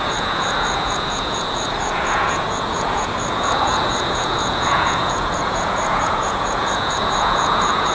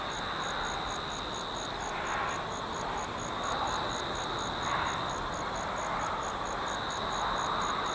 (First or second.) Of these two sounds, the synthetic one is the first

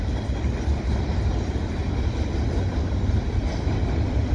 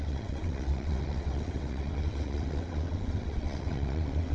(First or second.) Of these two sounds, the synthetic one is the second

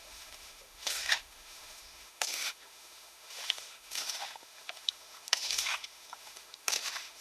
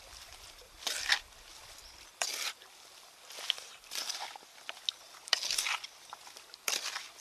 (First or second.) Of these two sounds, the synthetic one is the first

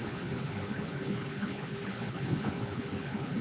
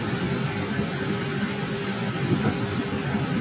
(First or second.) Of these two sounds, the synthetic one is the first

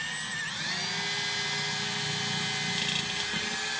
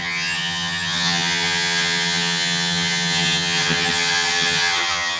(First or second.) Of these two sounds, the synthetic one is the second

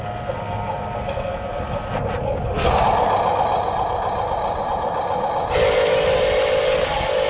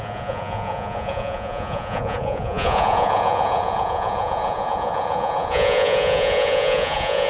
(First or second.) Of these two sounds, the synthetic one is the second